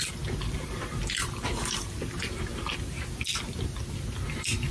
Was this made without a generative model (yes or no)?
yes